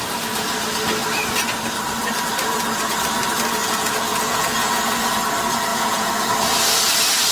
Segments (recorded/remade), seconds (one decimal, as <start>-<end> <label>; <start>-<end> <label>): 0.0-3.6 recorded; 3.6-5.1 remade; 5.1-5.7 recorded; 5.7-6.3 remade; 6.3-7.3 recorded